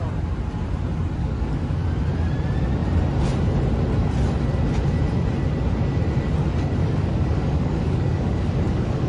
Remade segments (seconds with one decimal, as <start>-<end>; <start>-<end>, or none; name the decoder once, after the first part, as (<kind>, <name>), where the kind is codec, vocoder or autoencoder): 1.2-1.8 (codec, DAC); 6.8-9.1